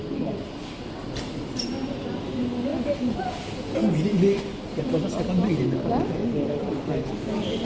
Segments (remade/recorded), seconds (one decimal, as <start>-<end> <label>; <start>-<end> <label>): 0.0-7.6 recorded